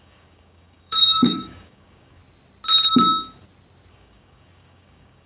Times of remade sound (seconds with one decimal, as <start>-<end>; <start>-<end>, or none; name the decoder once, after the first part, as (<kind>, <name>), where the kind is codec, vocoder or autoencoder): 0.0-2.2 (codec, DAC); 3.9-5.3